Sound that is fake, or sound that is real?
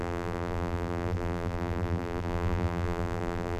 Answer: fake